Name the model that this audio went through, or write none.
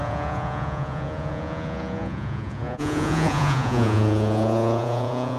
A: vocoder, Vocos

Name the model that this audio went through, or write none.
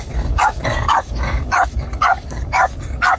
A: codec, DAC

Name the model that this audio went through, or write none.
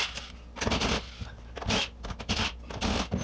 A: none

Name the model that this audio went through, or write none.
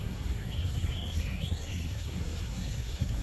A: codec, SNAC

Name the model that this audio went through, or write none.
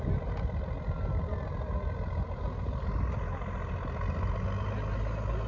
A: none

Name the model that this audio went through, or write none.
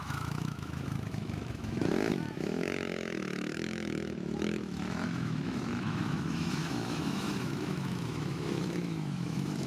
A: autoencoder, DAC-VAE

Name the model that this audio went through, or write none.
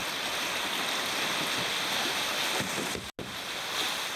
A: none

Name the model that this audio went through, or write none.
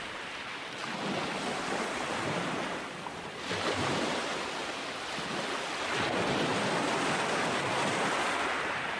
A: none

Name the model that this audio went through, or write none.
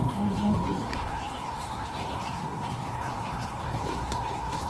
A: codec, SNAC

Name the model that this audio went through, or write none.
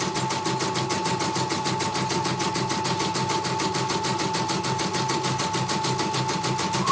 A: none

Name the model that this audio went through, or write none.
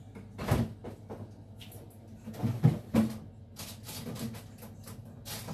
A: none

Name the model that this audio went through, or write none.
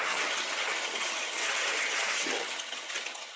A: vocoder, HiFi-GAN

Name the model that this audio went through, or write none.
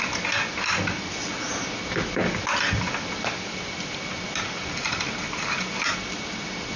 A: none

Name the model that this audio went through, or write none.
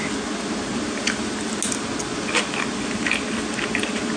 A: none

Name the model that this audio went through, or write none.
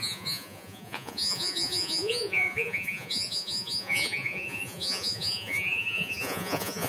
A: vocoder, Vocos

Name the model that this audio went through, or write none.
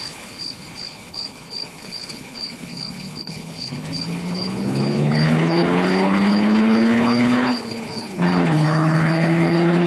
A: codec, HILCodec